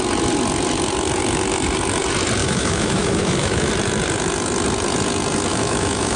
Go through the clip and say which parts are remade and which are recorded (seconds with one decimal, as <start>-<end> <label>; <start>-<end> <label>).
0.0-2.4 recorded; 2.4-3.7 remade; 3.7-5.5 recorded; 5.5-6.2 remade